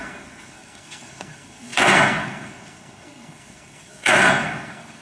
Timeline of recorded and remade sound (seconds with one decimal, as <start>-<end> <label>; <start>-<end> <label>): 0.0-5.0 remade

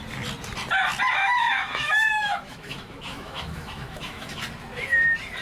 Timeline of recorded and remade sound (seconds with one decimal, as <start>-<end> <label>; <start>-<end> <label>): 0.0-1.2 recorded; 1.2-4.4 remade; 4.4-5.4 recorded

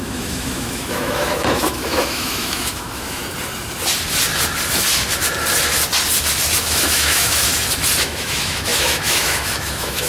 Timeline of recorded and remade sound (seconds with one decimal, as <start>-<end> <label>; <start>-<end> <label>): 0.0-3.2 remade; 3.2-6.6 recorded; 6.6-7.5 remade; 7.5-8.0 recorded; 8.0-10.1 remade

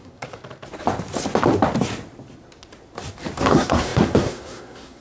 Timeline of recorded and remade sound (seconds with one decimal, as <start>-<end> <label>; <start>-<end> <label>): 0.0-0.4 remade; 0.4-3.4 recorded; 3.4-5.0 remade

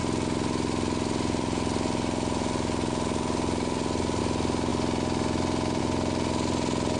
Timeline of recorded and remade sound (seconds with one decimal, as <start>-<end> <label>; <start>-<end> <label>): 0.0-7.0 recorded